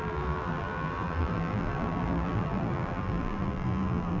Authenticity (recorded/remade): remade